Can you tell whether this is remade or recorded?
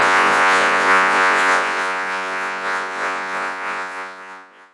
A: remade